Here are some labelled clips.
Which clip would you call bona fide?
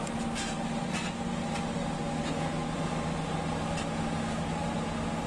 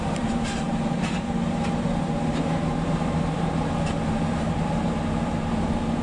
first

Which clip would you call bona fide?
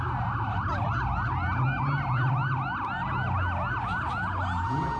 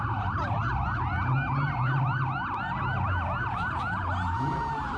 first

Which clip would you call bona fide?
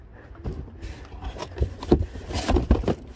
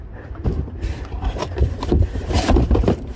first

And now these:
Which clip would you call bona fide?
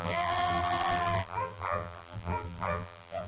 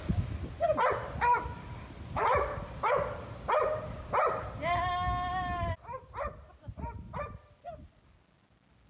second